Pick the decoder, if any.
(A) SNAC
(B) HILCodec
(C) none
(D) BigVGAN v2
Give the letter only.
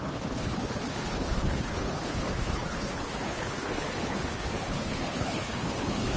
B